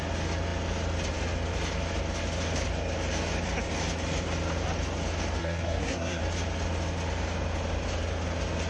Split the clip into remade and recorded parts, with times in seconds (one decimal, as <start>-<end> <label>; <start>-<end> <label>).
0.0-5.4 recorded; 5.4-6.2 remade; 6.2-8.7 recorded